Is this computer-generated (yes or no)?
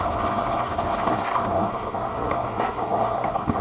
yes